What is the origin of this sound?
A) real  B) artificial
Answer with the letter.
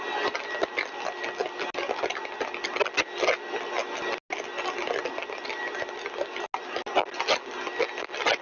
A